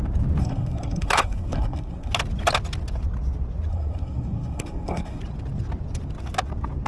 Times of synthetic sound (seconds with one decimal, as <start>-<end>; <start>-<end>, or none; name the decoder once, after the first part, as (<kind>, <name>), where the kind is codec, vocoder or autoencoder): 0.4-2.1 (codec, SNAC); 3.7-5.2